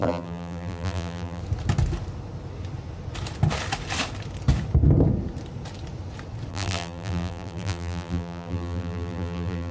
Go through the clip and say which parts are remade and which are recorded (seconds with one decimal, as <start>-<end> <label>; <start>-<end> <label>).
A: 0.0-1.4 remade; 1.4-6.5 recorded; 6.5-9.7 remade